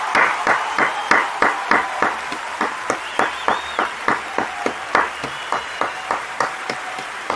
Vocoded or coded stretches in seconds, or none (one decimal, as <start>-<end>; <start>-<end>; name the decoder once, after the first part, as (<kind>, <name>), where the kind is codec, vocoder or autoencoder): 0.0-1.0 (vocoder, BigVGAN v2); 5.3-7.4